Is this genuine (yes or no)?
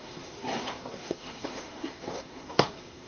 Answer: no